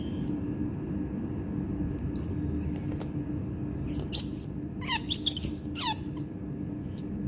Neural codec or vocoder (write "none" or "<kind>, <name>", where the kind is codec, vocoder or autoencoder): none